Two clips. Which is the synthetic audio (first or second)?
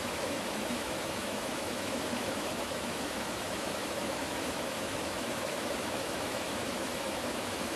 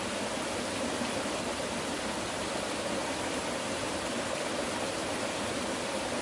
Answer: first